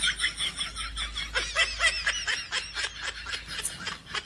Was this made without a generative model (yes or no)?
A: yes